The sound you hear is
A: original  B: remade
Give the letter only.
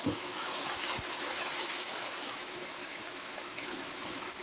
B